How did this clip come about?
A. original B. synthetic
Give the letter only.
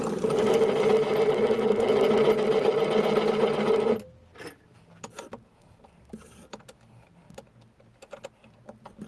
A